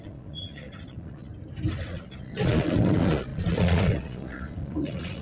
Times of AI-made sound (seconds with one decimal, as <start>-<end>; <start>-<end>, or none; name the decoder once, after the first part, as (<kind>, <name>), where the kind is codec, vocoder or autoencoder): 0.0-1.3 (vocoder, Vocos); 1.9-5.2